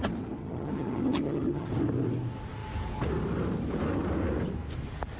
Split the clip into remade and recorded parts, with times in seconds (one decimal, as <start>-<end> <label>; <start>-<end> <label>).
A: 0.0-0.4 recorded; 0.4-1.7 remade; 1.7-5.2 recorded